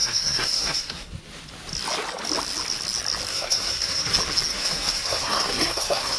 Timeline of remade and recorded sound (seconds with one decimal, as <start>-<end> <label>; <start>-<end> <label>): 0.0-1.1 remade; 1.1-3.3 recorded; 3.3-4.1 remade; 4.1-4.5 recorded; 4.5-6.2 remade